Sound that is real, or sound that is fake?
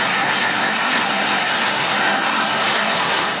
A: fake